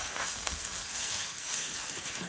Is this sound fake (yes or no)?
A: yes